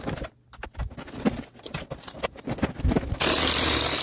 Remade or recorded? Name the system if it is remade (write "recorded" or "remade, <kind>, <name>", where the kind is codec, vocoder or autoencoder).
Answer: recorded